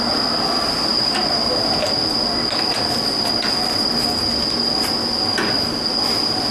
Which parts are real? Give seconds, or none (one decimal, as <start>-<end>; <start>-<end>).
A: 0.0-6.5